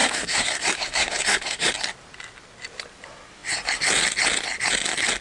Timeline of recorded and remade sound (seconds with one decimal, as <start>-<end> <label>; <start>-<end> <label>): 0.0-1.7 remade; 1.7-5.2 recorded